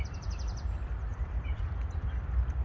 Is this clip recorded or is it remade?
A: remade